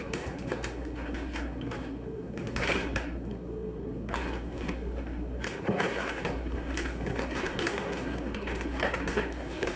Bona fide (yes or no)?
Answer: no